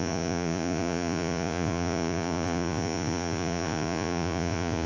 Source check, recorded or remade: remade